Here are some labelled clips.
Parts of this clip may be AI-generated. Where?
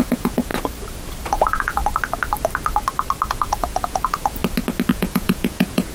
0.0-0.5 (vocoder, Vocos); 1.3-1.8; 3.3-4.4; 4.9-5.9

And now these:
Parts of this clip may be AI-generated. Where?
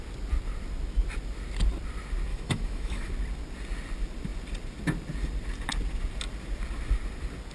2.3-3.1 (autoencoder, DAC-VAE)